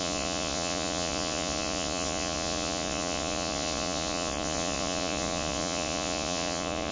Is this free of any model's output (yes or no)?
no